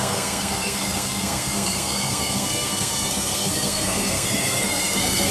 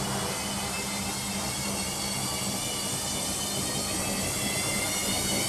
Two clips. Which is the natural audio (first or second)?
second